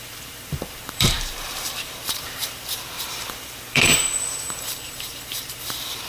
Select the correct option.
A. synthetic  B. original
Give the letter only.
A